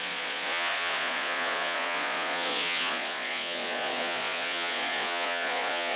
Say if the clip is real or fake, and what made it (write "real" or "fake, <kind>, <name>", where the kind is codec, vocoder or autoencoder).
fake, vocoder, Vocos